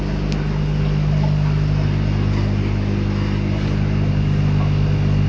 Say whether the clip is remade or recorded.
recorded